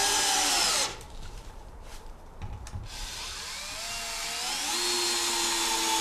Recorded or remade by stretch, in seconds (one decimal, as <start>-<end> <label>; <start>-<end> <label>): 0.0-3.6 remade; 3.6-6.0 recorded